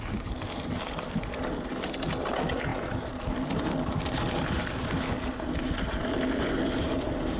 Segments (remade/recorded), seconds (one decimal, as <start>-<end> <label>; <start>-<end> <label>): 0.0-7.4 recorded